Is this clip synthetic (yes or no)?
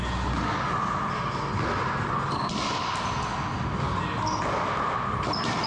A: no